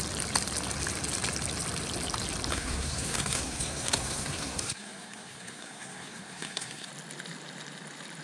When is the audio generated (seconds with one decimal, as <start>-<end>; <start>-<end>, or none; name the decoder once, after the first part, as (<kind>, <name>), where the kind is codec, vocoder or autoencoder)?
2.5-6.9 (codec, SNAC)